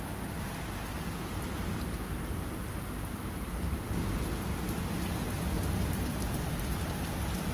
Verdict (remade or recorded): recorded